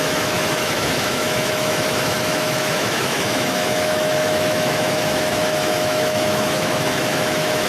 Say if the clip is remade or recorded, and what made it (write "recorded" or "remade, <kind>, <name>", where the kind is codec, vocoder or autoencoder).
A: remade, autoencoder, DAC-VAE